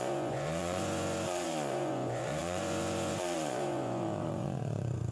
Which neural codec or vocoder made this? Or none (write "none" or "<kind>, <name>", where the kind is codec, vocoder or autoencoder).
vocoder, Vocos